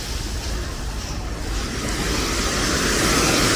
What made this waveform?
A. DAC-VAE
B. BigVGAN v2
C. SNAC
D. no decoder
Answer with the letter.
D